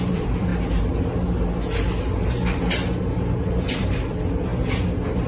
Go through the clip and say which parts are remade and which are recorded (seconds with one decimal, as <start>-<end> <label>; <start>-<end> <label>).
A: 0.0-0.5 remade; 0.5-3.4 recorded; 3.4-4.5 remade; 4.5-5.3 recorded